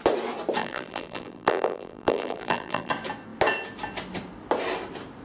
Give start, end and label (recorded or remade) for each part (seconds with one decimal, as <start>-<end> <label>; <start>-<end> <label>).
0.0-0.6 recorded; 0.6-2.9 remade; 2.9-5.2 recorded